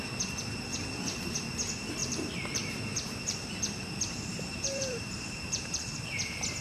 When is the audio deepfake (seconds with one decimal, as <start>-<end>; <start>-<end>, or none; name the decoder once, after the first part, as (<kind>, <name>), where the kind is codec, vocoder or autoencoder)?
0.7-1.4 (vocoder, BigVGAN v2); 2.0-6.0